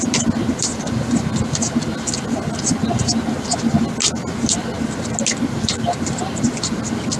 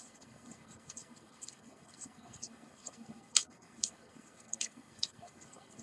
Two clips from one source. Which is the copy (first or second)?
second